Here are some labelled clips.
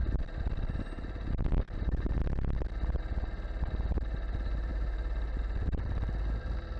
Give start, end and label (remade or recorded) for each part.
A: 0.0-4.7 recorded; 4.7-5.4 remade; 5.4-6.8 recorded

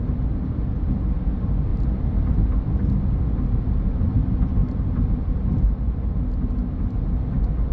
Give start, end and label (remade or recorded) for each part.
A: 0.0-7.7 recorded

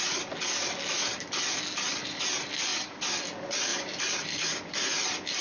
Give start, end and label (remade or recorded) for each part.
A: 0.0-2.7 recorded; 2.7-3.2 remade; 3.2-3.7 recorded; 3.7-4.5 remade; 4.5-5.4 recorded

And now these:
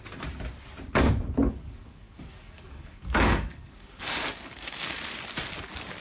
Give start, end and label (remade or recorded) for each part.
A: 0.0-1.4 recorded; 1.4-5.0 remade; 5.0-6.0 recorded